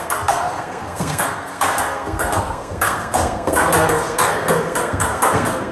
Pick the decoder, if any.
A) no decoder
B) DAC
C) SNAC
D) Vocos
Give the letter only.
C